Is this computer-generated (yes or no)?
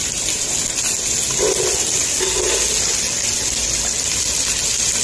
no